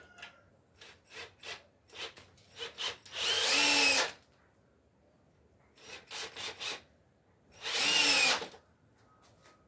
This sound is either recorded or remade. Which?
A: recorded